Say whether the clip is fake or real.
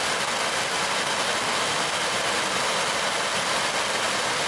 real